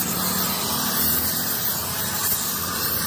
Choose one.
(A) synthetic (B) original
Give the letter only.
B